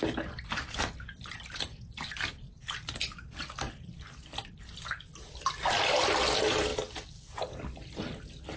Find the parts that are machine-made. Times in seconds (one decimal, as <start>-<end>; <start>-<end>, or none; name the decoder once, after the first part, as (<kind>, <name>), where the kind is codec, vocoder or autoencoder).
none